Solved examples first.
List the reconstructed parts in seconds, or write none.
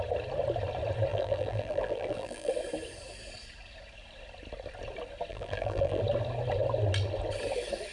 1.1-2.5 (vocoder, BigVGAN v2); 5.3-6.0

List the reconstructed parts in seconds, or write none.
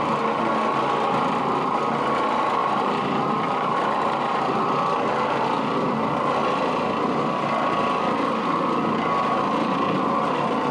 2.6-4.2 (vocoder, BigVGAN v2)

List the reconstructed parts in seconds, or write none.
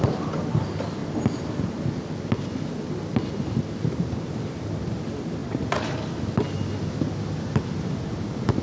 none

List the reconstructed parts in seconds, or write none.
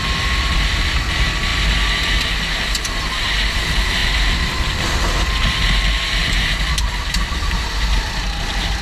4.0-4.9 (vocoder, BigVGAN v2); 6.2-7.7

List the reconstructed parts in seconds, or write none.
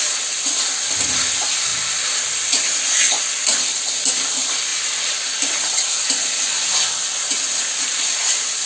0.0-1.7 (vocoder, BigVGAN v2); 2.3-8.7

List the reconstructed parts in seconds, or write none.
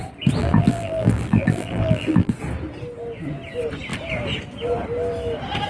0.4-2.3 (vocoder, BigVGAN v2)